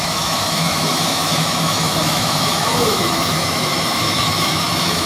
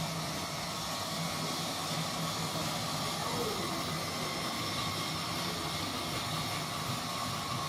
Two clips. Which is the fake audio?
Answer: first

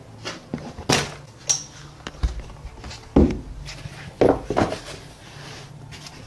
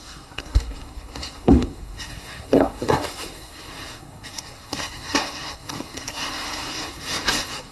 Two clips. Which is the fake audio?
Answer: second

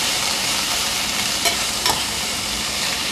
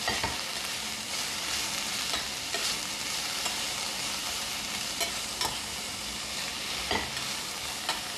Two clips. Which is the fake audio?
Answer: first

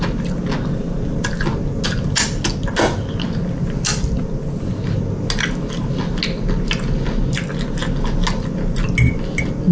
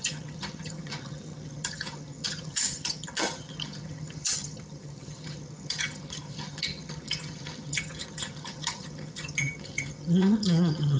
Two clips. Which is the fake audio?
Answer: second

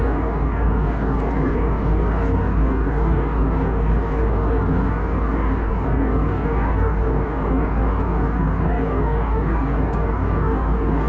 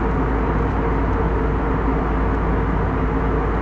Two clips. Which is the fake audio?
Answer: first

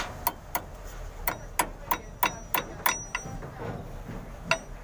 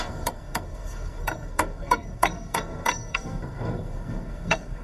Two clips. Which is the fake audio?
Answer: second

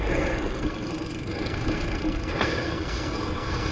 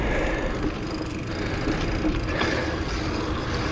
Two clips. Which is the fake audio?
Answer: first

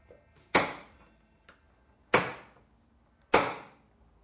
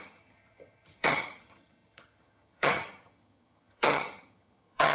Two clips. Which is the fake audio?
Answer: second